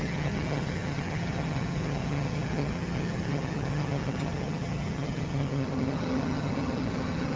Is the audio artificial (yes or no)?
yes